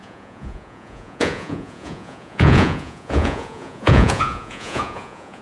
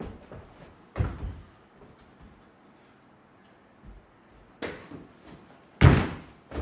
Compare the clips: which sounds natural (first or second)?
second